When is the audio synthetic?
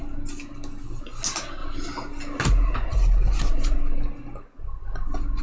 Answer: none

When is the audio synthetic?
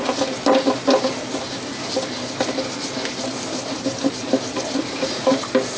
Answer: none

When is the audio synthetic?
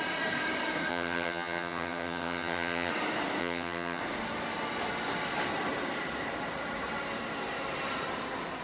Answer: 0.9-2.9 (vocoder, HiFi-GAN); 3.4-4.0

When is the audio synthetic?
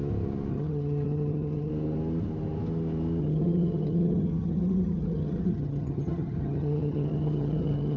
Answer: 0.5-1.7 (vocoder, HiFi-GAN); 3.2-8.0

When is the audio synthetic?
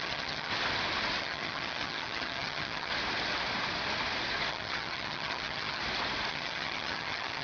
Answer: 0.0-0.5 (vocoder, HiFi-GAN); 1.2-2.9; 4.5-5.8; 6.3-7.4